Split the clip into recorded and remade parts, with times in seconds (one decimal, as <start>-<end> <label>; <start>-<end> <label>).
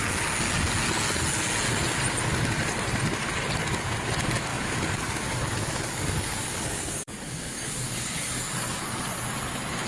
0.0-4.5 recorded; 4.5-8.8 remade; 8.8-9.9 recorded